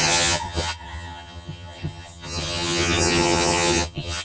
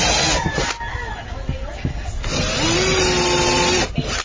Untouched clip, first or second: second